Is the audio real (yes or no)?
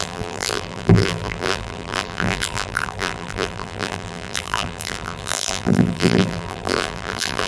no